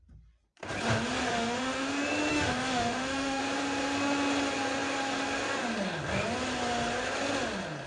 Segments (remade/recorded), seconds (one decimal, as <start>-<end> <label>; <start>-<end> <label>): 0.0-1.2 recorded; 1.2-1.9 remade; 1.9-2.3 recorded; 2.3-3.4 remade; 3.4-7.9 recorded